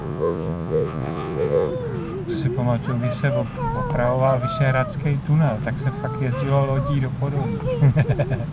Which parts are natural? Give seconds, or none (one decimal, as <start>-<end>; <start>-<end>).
1.7-8.5